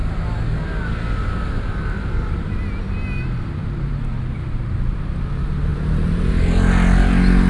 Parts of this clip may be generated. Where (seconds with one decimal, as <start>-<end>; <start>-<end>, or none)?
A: 3.6-4.7; 5.7-6.3